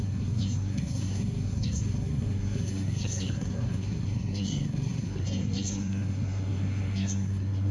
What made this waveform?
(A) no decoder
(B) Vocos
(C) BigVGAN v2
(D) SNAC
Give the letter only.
D